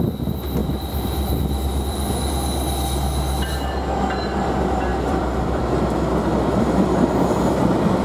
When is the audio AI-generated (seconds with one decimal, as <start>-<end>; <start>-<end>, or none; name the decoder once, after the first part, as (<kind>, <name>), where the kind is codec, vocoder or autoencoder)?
0.6-2.3 (vocoder, BigVGAN v2); 4.9-5.6